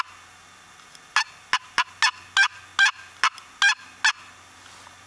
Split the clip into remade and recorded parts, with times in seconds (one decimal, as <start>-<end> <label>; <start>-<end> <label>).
0.0-5.1 recorded